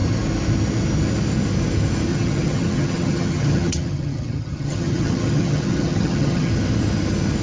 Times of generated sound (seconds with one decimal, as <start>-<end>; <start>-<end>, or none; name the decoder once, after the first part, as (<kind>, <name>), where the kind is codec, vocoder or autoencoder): 2.1-6.5 (vocoder, HiFi-GAN)